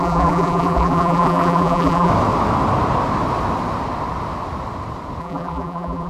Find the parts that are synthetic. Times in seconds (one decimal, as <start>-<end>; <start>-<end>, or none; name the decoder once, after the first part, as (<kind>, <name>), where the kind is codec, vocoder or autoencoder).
0.0-2.1 (vocoder, BigVGAN v2); 5.2-6.1